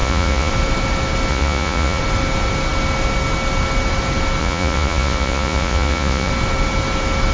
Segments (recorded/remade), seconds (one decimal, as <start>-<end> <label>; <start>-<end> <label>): 0.0-0.5 remade; 0.5-1.3 recorded; 1.3-2.0 remade; 2.0-4.4 recorded; 4.4-6.3 remade; 6.3-7.3 recorded